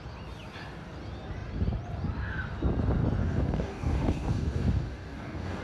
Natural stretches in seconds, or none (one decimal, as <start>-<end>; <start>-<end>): 0.0-3.2